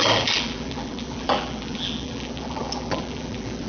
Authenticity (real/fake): fake